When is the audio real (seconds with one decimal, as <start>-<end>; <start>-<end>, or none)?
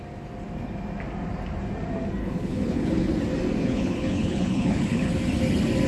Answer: 0.0-2.2; 3.1-3.6; 5.1-5.9